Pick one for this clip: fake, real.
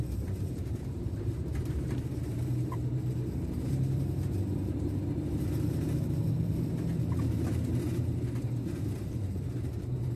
fake